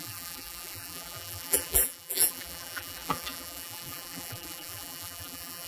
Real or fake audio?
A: fake